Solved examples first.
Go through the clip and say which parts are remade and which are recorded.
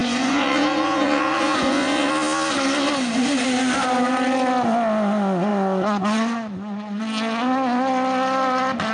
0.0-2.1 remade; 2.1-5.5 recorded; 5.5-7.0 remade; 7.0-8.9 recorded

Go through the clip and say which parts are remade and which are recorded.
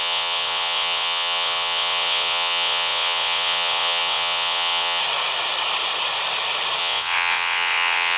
0.0-5.0 remade; 5.0-6.8 recorded; 6.8-8.2 remade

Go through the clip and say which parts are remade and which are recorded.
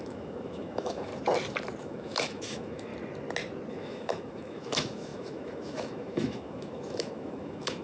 0.0-1.1 remade; 1.1-1.8 recorded; 1.8-2.9 remade; 2.9-3.7 recorded; 3.7-7.8 remade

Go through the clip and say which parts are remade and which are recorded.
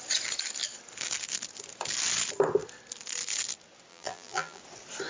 0.0-3.9 recorded; 3.9-4.6 remade; 4.6-5.1 recorded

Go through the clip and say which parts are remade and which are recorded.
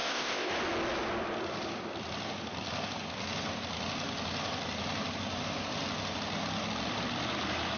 0.0-0.5 remade; 0.5-7.8 recorded